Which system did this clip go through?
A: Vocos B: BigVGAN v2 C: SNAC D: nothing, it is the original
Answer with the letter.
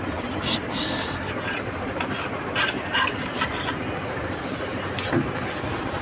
D